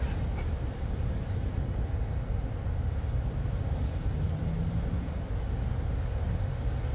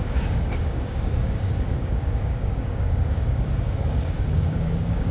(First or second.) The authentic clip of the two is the first